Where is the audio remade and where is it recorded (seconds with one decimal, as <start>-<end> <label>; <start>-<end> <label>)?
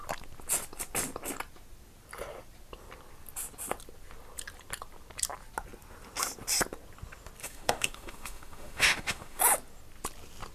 0.0-7.4 recorded; 7.4-9.4 remade; 9.4-10.5 recorded